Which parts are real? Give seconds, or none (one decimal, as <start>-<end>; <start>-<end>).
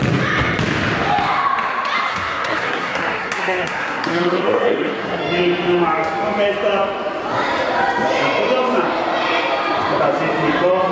0.0-2.1; 5.2-10.9